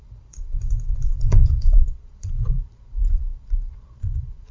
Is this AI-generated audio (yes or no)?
yes